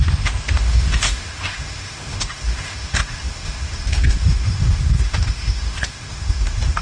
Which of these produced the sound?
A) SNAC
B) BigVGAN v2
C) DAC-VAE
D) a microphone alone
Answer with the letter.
C